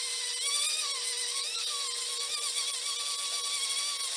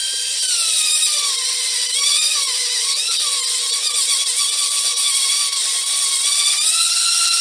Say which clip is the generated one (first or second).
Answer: second